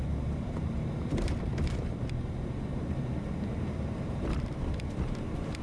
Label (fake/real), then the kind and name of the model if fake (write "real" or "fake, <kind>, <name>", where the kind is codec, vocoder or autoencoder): fake, vocoder, BigVGAN v2